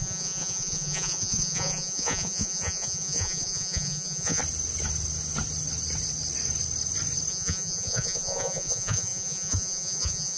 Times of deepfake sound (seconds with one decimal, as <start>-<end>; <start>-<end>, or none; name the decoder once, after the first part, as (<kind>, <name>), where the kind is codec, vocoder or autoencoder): 0.0-4.4 (vocoder, Vocos); 7.3-10.4